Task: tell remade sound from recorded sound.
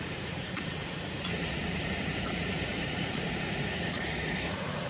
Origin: remade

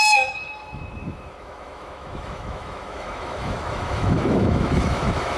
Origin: remade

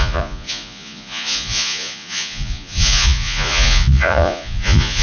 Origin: remade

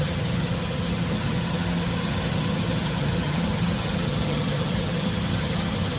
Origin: remade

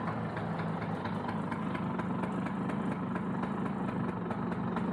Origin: recorded